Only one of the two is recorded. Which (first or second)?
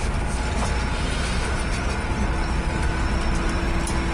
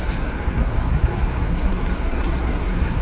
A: first